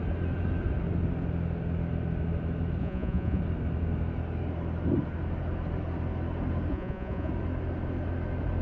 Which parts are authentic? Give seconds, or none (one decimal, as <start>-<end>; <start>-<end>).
0.0-2.8; 3.4-6.7; 7.3-8.6